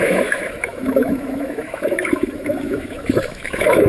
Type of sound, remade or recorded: remade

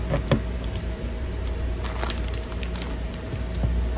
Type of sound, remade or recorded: recorded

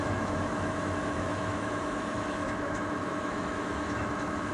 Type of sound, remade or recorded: remade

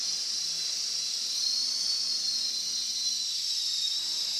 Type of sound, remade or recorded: recorded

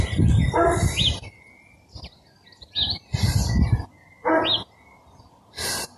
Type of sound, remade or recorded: recorded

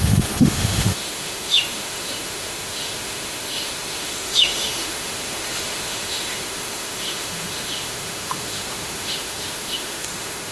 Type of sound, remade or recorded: remade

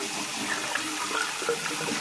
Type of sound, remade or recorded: recorded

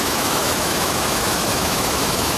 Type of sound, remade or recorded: remade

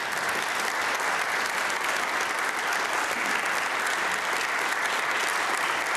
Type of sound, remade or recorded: recorded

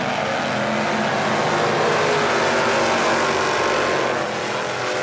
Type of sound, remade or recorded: recorded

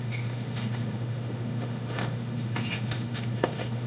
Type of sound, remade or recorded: remade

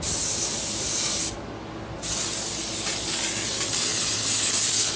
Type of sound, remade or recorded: recorded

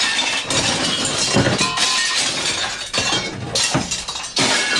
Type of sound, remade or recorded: recorded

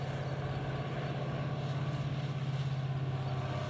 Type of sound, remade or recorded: recorded